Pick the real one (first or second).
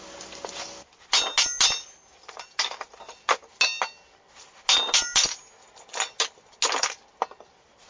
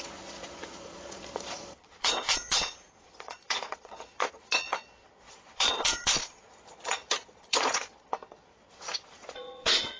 first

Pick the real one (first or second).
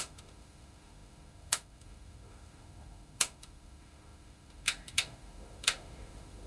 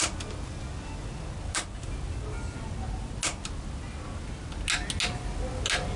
second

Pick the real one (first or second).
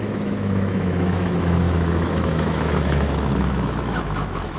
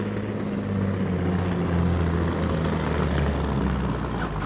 second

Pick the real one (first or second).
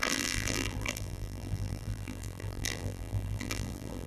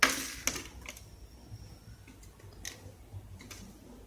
second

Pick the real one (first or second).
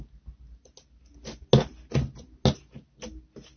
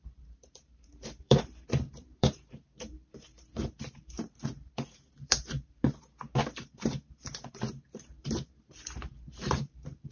first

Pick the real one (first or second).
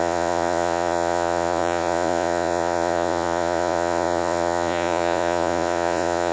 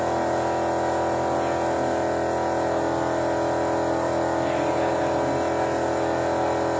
second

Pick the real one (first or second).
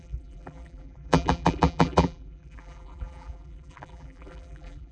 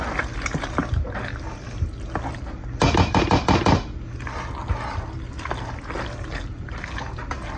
second